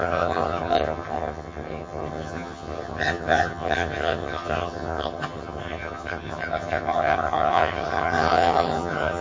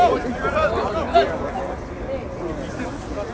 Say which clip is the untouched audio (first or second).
second